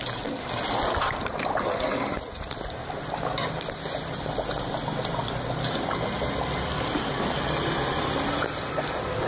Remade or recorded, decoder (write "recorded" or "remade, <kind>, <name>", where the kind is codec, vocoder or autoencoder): recorded